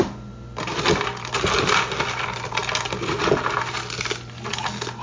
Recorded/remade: recorded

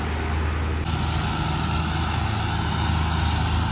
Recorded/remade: recorded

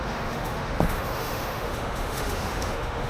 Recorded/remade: remade